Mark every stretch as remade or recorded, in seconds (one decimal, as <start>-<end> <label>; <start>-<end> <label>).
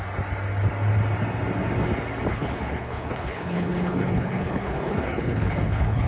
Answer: 0.0-2.3 recorded; 2.3-6.1 remade